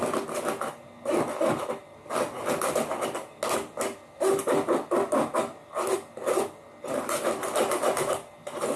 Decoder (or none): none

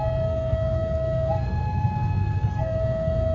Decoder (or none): codec, SNAC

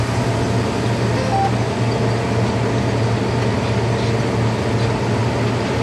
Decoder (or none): none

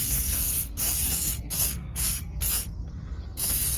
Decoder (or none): codec, SNAC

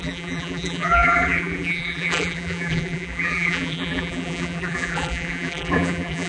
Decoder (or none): vocoder, BigVGAN v2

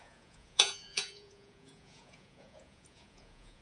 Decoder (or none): vocoder, Vocos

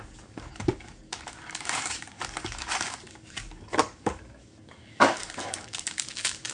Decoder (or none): codec, DAC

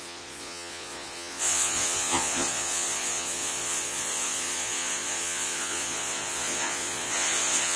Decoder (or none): vocoder, Vocos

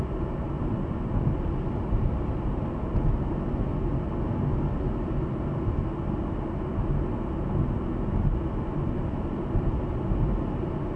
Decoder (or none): none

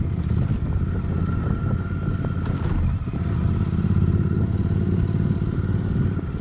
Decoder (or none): none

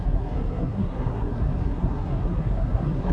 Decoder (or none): codec, SNAC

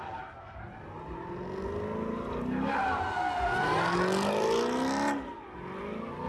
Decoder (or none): none